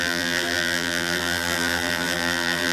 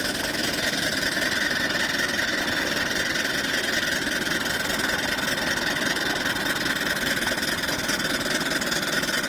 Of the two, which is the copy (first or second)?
first